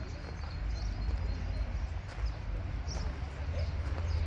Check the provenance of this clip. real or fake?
real